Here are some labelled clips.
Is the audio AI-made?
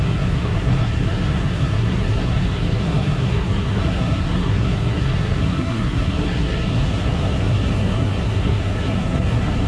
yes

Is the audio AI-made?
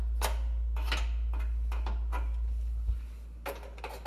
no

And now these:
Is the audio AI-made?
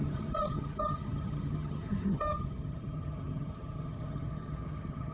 yes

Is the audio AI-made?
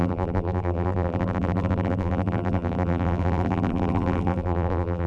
yes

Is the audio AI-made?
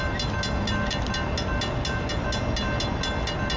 no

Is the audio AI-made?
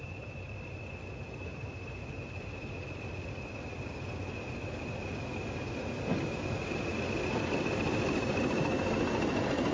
no